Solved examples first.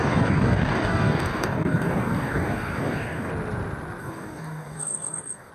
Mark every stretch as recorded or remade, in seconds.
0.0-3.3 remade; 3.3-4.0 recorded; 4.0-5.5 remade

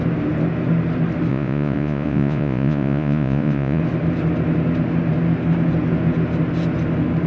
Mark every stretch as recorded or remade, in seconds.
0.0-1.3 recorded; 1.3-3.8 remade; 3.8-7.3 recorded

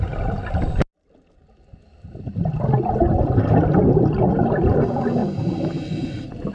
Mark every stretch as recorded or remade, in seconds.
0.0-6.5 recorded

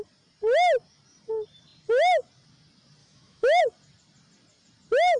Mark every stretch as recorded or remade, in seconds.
0.0-3.0 recorded; 3.0-3.6 remade; 3.6-5.2 recorded

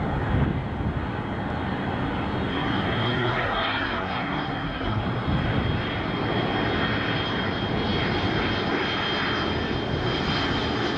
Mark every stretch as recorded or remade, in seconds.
0.0-2.5 recorded; 2.5-5.0 remade; 5.0-11.0 recorded